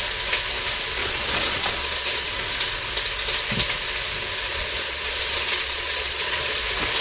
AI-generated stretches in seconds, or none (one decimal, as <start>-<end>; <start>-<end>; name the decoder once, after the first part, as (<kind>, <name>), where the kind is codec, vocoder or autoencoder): 1.0-2.3 (vocoder, Vocos); 4.5-6.6